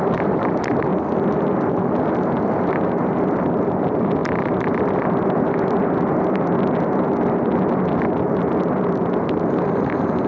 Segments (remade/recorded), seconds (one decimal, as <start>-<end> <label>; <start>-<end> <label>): 0.0-10.3 recorded